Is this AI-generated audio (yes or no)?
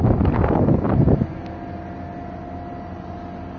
no